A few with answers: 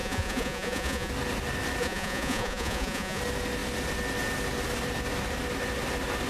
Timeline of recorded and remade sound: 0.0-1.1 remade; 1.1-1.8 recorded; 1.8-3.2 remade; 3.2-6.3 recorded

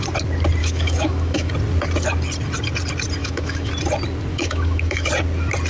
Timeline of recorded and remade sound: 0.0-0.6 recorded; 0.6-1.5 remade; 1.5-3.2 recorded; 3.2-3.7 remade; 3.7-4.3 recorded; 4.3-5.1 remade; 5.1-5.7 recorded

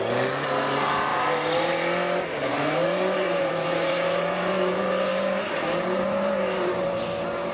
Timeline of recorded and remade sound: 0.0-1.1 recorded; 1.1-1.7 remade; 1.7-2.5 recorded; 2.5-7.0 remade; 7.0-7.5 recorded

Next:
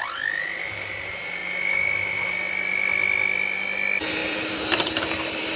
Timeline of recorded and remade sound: 0.0-4.2 recorded; 4.2-5.6 remade